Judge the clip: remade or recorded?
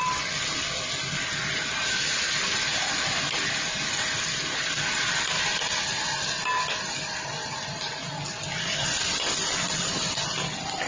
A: recorded